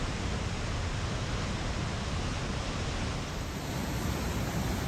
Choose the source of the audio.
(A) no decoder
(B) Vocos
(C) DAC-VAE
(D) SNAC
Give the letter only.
A